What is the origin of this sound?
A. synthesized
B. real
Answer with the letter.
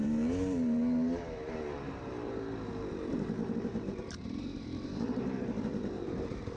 A